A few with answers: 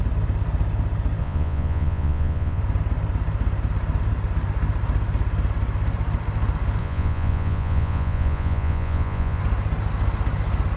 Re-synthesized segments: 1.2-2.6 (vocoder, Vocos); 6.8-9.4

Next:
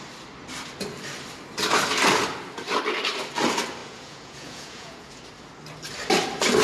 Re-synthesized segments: 3.8-5.2 (vocoder, Vocos)

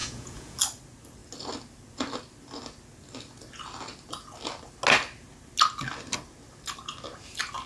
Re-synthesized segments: 0.0-0.6 (vocoder, Vocos)